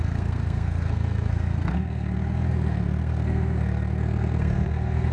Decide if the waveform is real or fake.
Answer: fake